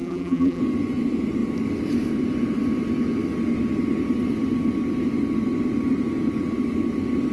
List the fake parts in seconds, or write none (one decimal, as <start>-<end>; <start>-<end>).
0.0-0.6